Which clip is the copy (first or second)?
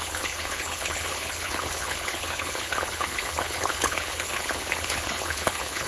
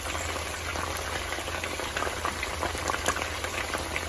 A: first